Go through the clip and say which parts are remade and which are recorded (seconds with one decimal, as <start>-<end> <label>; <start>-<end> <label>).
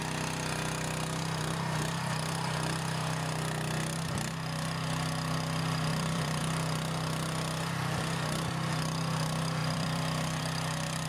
0.0-5.9 recorded; 5.9-6.4 remade; 6.4-9.6 recorded; 9.6-10.4 remade; 10.4-11.1 recorded